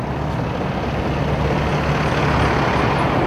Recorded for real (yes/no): yes